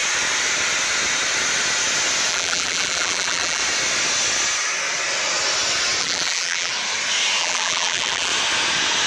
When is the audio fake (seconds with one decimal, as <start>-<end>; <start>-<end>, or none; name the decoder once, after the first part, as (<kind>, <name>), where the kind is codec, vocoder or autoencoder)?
2.3-3.6 (vocoder, BigVGAN v2); 6.0-6.7; 7.4-8.3

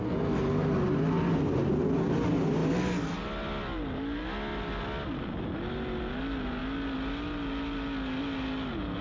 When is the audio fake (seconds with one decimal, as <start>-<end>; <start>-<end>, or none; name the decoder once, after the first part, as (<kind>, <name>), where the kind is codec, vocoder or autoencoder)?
none